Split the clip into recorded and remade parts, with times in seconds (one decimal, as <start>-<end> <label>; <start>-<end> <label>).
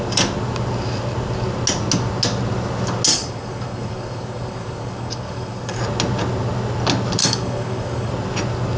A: 0.0-3.1 recorded; 3.1-5.8 remade; 5.8-7.2 recorded; 7.2-8.1 remade; 8.1-8.8 recorded